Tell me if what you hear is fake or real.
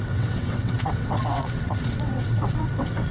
fake